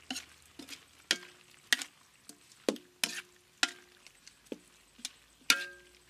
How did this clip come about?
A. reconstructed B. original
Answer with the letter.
B